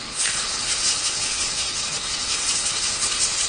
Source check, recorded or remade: remade